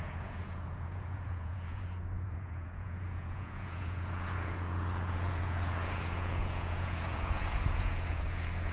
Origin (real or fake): fake